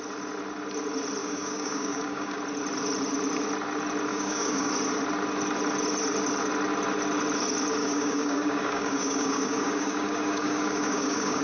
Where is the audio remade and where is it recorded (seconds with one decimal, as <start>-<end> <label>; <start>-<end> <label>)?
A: 0.0-1.2 recorded; 1.2-2.4 remade; 2.4-4.1 recorded; 4.1-4.7 remade; 4.7-7.8 recorded; 7.8-11.4 remade